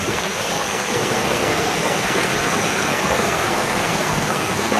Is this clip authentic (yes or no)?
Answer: no